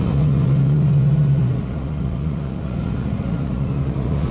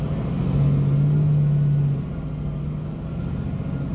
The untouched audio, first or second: second